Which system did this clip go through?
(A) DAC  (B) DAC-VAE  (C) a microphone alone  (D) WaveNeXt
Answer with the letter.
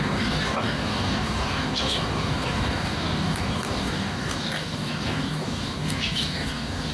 A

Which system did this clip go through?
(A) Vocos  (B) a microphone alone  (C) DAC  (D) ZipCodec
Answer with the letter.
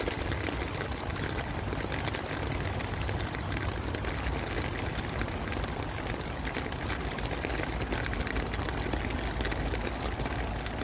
B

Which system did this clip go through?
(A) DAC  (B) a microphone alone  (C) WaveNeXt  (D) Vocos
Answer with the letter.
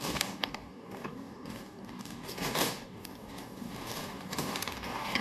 A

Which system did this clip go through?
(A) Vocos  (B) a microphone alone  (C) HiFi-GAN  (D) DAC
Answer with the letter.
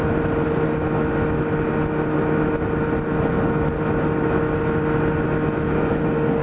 B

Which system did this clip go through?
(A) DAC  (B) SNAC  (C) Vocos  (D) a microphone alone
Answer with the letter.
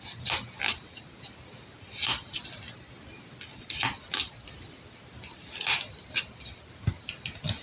D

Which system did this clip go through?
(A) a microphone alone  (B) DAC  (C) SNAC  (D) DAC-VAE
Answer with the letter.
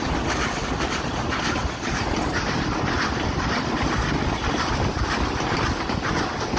A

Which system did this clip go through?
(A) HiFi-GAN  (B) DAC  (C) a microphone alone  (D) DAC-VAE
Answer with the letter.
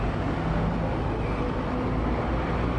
C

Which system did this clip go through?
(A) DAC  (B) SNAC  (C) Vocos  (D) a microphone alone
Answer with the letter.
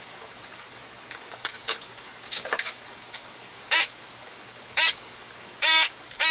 A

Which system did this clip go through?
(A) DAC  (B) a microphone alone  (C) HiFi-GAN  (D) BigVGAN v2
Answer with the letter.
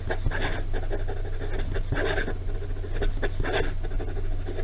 B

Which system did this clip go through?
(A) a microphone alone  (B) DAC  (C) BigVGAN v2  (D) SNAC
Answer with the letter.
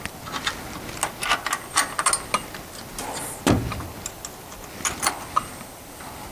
A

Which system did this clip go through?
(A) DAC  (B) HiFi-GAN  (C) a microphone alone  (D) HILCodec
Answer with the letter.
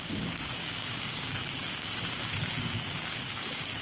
A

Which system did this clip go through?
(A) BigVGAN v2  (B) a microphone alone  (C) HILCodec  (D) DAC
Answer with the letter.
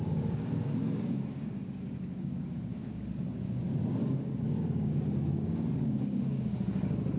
D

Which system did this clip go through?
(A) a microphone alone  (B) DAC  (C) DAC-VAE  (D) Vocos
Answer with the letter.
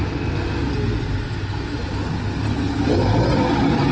A